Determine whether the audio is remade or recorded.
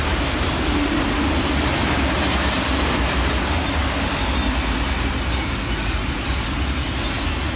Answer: recorded